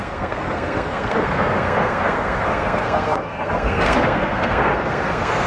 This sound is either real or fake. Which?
fake